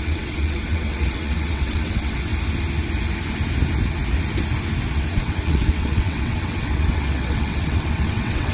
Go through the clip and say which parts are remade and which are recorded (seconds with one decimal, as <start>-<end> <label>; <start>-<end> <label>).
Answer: 0.0-2.3 remade; 2.3-4.9 recorded; 4.9-8.5 remade